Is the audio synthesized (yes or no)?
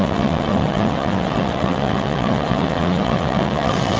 yes